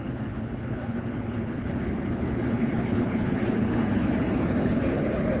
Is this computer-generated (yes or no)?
yes